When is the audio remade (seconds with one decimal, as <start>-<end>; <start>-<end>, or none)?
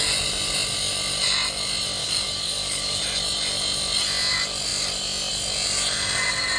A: 2.0-3.0